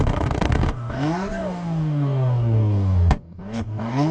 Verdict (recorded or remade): remade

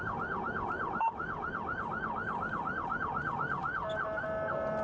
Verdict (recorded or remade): recorded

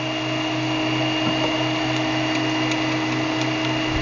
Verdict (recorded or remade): recorded